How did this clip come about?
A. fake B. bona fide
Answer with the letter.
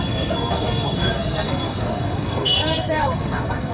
A